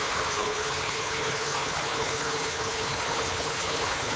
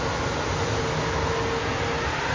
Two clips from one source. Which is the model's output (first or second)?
first